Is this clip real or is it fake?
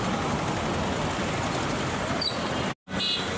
real